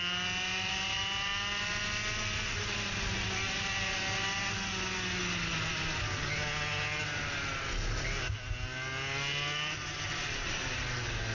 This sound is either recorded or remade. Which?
recorded